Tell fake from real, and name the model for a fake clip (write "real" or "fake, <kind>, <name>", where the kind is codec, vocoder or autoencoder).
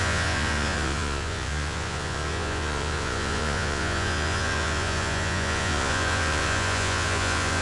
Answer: fake, vocoder, Vocos